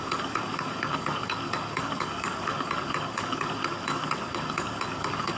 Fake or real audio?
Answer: fake